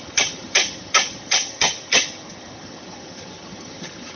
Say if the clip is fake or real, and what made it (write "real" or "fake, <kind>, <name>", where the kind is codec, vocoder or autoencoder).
fake, vocoder, HiFi-GAN